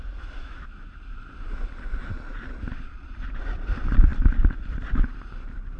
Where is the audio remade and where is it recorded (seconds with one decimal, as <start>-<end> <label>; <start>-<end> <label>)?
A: 0.0-0.4 recorded; 0.4-0.9 remade; 0.9-5.8 recorded